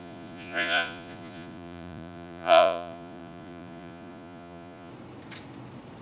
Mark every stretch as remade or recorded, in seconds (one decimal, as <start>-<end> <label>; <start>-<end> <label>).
0.0-4.9 remade; 4.9-6.0 recorded